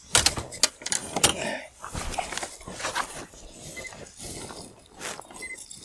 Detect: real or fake real